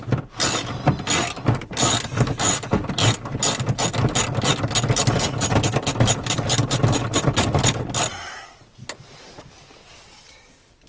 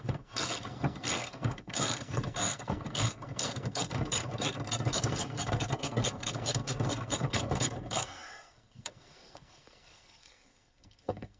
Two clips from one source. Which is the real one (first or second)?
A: first